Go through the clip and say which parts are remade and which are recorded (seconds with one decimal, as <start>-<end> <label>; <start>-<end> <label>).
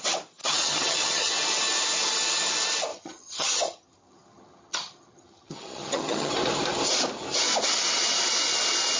0.0-0.4 recorded; 0.4-1.3 remade; 1.3-2.9 recorded; 2.9-6.3 remade; 6.3-9.0 recorded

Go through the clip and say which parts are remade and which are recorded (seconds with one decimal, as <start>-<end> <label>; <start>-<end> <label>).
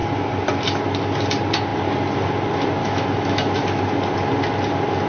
0.0-2.8 recorded; 2.8-3.8 remade; 3.8-5.1 recorded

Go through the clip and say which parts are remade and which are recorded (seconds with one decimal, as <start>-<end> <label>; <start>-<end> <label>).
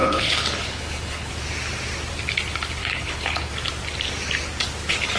0.0-1.3 remade; 1.3-2.8 recorded; 2.8-3.5 remade; 3.5-5.2 recorded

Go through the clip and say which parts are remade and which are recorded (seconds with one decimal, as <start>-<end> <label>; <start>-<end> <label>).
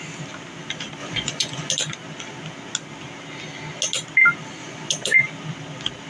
0.0-1.0 recorded; 1.0-1.7 remade; 1.7-4.6 recorded; 4.6-5.3 remade; 5.3-6.1 recorded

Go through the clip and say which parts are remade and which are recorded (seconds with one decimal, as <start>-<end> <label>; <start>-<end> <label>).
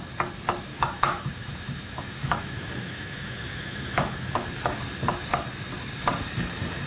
0.0-0.7 recorded; 0.7-4.8 remade; 4.8-6.9 recorded